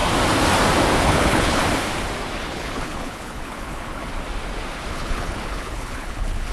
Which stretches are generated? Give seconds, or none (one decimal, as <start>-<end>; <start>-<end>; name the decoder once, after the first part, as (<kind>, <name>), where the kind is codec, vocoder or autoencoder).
1.0-1.6 (codec, HILCodec); 2.4-4.0; 4.9-6.5